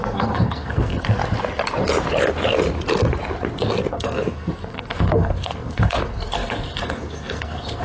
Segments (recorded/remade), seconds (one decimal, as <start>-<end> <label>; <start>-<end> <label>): 0.0-1.2 remade; 1.2-3.9 recorded; 3.9-7.8 remade